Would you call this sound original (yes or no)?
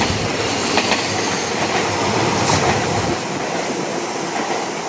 yes